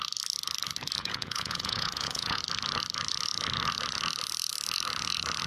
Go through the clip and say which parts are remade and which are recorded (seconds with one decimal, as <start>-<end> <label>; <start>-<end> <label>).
0.0-1.0 recorded; 1.0-2.4 remade; 2.4-5.5 recorded